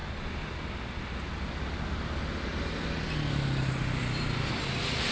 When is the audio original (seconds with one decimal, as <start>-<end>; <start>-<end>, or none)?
0.0-5.1